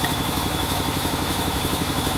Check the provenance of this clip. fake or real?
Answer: fake